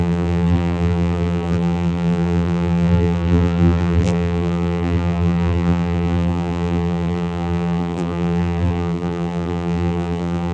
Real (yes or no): no